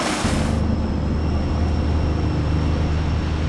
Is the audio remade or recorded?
recorded